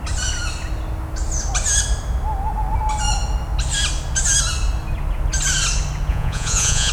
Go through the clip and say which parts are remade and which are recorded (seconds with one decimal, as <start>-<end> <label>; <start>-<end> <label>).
0.0-6.1 recorded; 6.1-6.9 remade